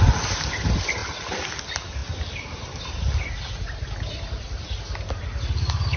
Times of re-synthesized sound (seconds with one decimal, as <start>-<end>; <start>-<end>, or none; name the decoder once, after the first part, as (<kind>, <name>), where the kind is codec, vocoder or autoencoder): none